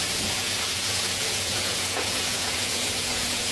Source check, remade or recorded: remade